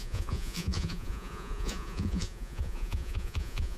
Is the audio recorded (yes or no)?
no